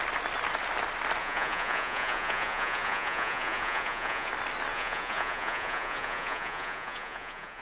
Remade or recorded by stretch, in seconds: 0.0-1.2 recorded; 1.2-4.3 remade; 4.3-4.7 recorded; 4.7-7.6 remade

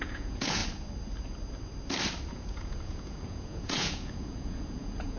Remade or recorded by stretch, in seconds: 0.0-0.6 remade; 0.6-2.3 recorded; 2.3-5.2 remade

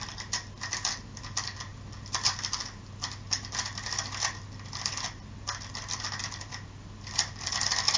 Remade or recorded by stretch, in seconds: 0.0-8.0 recorded

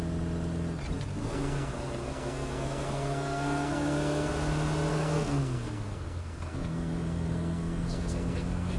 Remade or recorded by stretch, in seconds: 0.0-1.2 recorded; 1.2-4.3 remade; 4.3-4.9 recorded; 4.9-8.8 remade

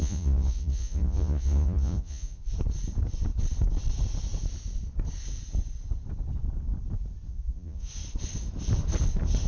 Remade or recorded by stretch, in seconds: 0.0-2.5 remade; 2.5-7.3 recorded; 7.3-7.9 remade; 7.9-9.5 recorded

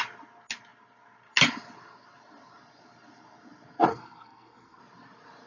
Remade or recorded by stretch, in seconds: 0.0-3.9 recorded; 3.9-4.8 remade; 4.8-5.5 recorded